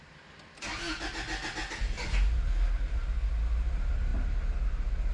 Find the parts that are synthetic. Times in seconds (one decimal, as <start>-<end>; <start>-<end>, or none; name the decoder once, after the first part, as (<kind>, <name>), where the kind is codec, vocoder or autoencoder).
none